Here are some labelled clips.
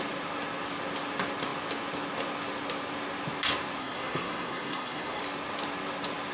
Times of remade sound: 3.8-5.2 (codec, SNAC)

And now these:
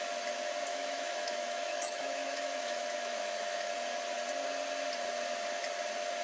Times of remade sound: 0.7-3.7 (autoencoder, DAC-VAE)